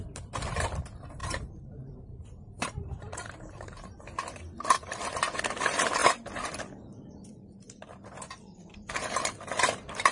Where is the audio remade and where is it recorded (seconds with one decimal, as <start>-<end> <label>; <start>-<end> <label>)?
0.0-1.2 recorded; 1.2-4.4 remade; 4.4-10.1 recorded

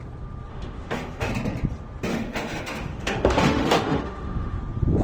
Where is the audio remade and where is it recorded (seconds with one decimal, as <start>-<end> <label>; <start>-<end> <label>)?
0.0-0.5 recorded; 0.5-1.3 remade; 1.3-2.1 recorded; 2.1-4.6 remade; 4.6-5.0 recorded

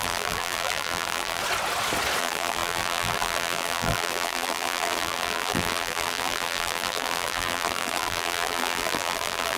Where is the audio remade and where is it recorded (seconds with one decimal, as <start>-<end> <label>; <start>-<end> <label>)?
0.0-1.4 remade; 1.4-2.2 recorded; 2.2-9.6 remade

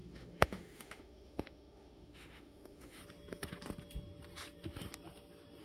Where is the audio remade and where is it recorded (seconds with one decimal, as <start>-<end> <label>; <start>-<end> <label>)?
0.0-3.0 remade; 3.0-5.6 recorded